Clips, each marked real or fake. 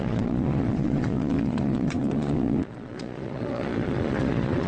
fake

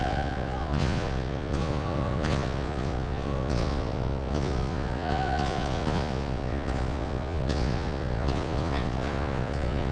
fake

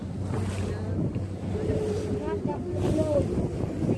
real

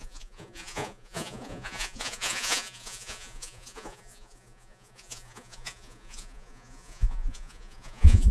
fake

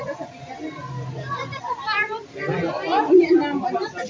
real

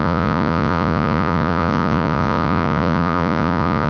fake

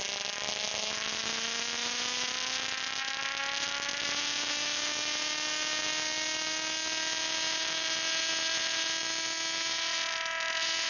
real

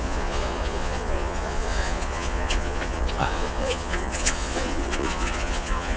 fake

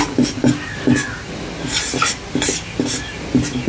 real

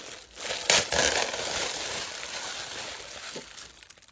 real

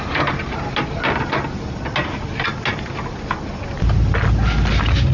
real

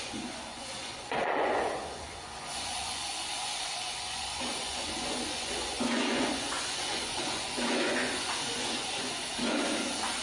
fake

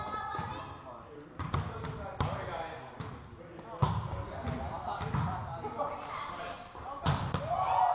real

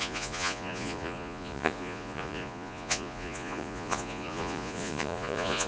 fake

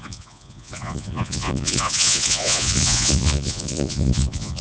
fake